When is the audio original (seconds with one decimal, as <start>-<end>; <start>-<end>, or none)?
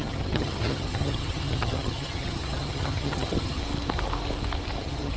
3.6-4.8